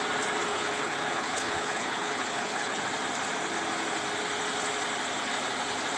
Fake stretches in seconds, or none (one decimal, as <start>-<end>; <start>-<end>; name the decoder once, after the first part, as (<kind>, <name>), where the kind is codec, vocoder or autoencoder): 0.5-2.8 (codec, HILCodec)